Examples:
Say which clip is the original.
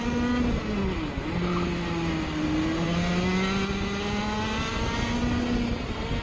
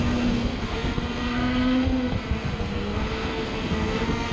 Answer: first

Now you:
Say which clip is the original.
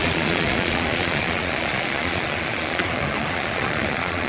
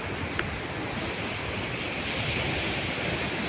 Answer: second